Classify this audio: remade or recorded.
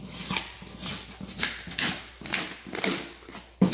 recorded